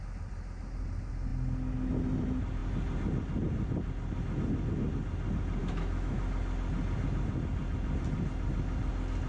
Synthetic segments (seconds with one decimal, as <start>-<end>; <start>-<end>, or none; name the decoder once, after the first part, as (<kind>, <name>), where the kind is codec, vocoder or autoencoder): 5.6-6.2 (autoencoder, DAC-VAE)